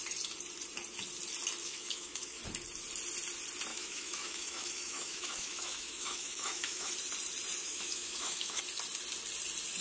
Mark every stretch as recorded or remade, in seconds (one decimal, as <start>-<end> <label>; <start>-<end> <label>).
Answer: 0.0-1.6 recorded; 1.6-2.4 remade; 2.4-3.7 recorded; 3.7-6.9 remade; 6.9-7.6 recorded; 7.6-8.6 remade; 8.6-9.8 recorded